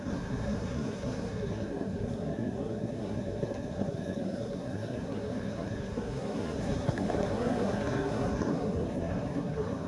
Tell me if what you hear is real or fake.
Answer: fake